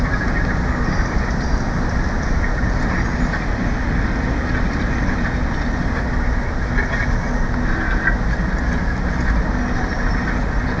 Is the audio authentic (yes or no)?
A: yes